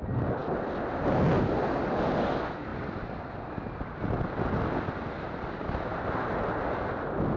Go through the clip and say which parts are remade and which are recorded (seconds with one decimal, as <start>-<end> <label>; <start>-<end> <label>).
0.0-7.4 recorded